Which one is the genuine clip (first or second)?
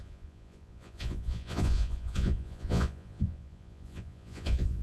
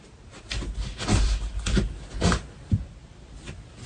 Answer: second